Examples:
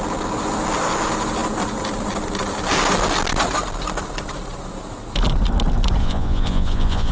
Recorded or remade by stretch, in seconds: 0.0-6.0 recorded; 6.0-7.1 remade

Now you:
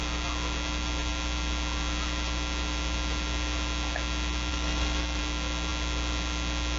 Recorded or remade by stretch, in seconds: 0.0-4.5 recorded; 4.5-5.2 remade; 5.2-6.8 recorded

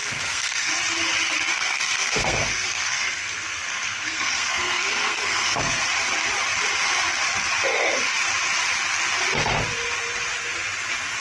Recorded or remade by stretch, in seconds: 0.0-0.7 remade; 0.7-1.5 recorded; 1.5-5.8 remade; 5.8-11.2 recorded